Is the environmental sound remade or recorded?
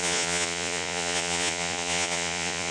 remade